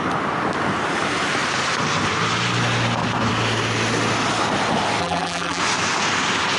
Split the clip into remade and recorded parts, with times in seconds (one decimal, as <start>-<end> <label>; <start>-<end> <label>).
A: 0.0-5.0 recorded; 5.0-5.6 remade; 5.6-6.6 recorded